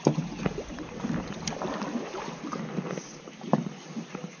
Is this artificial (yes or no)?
no